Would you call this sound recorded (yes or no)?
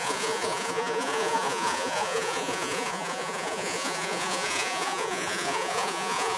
no